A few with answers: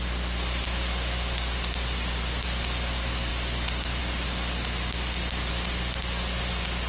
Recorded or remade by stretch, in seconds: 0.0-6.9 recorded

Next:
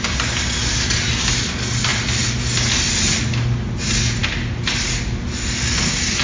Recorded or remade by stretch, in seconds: 0.0-6.2 recorded

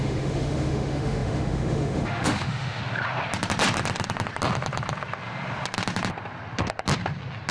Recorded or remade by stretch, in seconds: 0.0-2.8 remade; 2.8-7.5 recorded

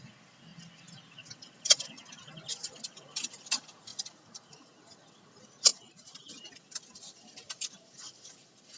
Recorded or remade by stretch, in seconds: 0.0-3.9 recorded; 3.9-4.8 remade; 4.8-5.7 recorded; 5.7-6.3 remade; 6.3-8.8 recorded

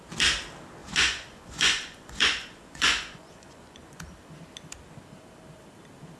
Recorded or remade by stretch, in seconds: 0.0-0.8 recorded; 0.8-4.0 remade; 4.0-6.2 recorded

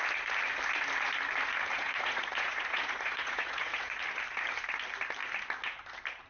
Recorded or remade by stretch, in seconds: 0.0-1.7 recorded; 1.7-4.0 remade; 4.0-6.3 recorded

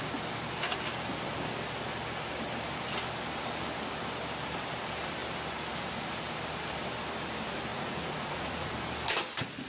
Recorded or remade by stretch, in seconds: 0.0-7.7 recorded; 7.7-8.7 remade; 8.7-9.7 recorded